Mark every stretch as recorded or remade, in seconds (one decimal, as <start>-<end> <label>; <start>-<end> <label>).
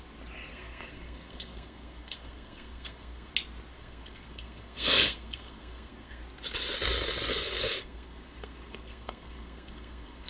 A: 0.0-0.5 recorded; 0.5-3.3 remade; 3.3-3.7 recorded; 3.7-6.2 remade; 6.2-7.3 recorded; 7.3-10.3 remade